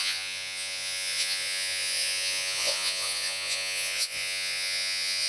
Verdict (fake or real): fake